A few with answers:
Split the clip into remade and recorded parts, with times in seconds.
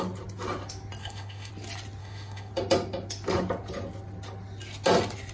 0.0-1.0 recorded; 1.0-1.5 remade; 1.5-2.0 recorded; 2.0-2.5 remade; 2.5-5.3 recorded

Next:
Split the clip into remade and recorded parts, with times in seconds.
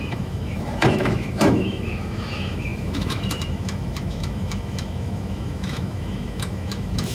0.0-7.1 remade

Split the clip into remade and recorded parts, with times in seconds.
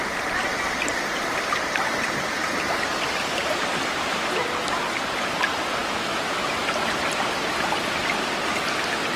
0.0-5.8 recorded; 5.8-6.6 remade; 6.6-9.2 recorded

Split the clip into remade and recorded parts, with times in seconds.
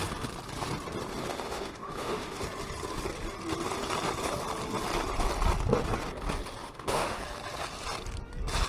0.0-1.3 recorded; 1.3-2.4 remade; 2.4-6.6 recorded; 6.6-7.2 remade; 7.2-8.7 recorded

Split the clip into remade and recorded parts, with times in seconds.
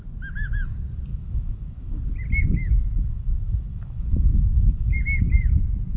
0.0-1.1 recorded; 1.1-2.0 remade; 2.0-2.6 recorded; 2.6-4.9 remade; 4.9-6.0 recorded